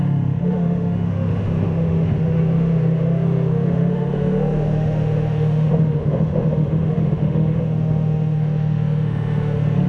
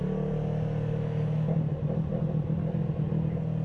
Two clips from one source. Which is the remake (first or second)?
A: first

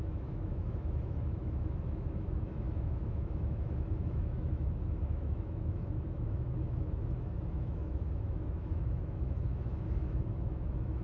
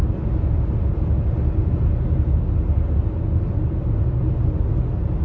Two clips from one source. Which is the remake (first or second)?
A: first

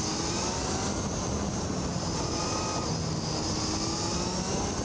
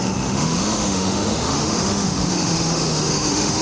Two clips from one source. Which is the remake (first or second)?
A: second